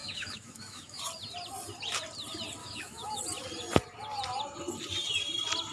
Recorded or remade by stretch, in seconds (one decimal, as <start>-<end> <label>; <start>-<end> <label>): 0.0-1.0 remade; 1.0-2.6 recorded; 2.6-3.2 remade; 3.2-5.7 recorded